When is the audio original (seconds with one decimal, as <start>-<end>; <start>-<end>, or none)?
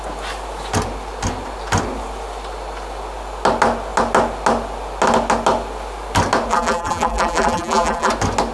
0.0-6.5; 8.1-8.5